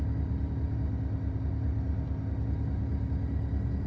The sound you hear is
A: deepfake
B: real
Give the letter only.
B